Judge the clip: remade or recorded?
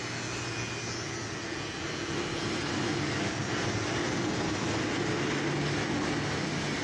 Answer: recorded